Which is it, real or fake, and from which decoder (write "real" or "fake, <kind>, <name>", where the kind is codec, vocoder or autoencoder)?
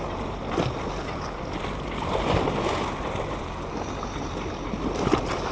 real